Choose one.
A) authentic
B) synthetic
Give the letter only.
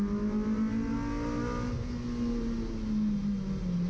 A